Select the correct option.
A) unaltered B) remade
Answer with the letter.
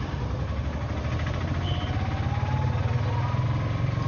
A